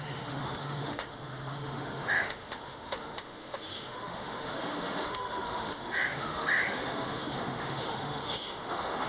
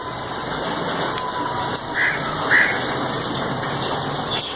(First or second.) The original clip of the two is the second